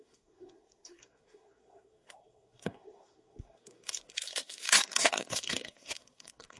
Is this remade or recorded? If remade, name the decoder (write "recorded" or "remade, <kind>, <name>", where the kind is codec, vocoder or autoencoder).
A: remade, codec, SNAC